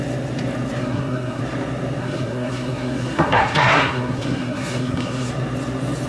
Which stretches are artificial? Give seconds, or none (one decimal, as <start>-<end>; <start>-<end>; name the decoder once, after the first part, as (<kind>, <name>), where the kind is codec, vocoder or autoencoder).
0.8-1.4 (codec, SNAC); 2.0-5.3